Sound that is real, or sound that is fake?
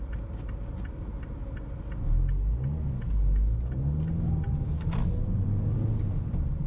real